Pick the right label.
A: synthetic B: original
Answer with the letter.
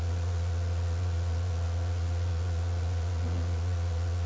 A